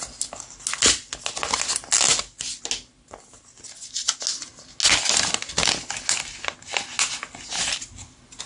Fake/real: real